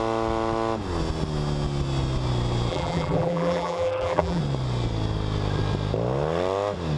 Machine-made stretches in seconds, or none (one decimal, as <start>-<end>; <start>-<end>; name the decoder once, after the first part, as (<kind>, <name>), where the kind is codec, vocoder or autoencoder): 2.7-4.4 (vocoder, BigVGAN v2)